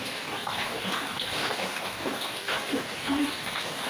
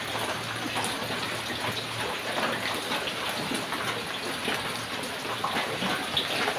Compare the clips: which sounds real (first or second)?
second